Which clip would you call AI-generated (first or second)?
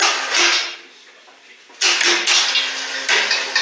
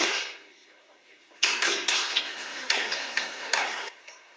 second